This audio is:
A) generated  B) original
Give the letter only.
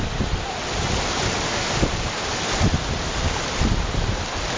B